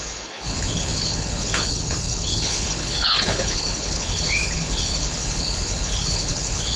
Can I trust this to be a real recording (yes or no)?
no